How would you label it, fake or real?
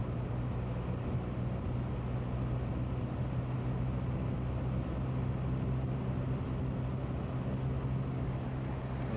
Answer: real